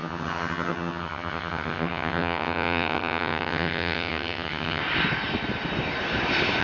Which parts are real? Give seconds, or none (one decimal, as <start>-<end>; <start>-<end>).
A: 4.8-6.6